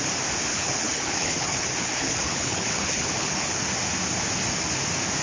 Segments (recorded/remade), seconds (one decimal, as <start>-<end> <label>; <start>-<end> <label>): 0.0-0.5 recorded; 0.5-3.6 remade; 3.6-5.2 recorded